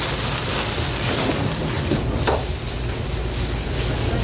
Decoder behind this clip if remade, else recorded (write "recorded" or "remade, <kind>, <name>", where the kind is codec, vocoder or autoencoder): recorded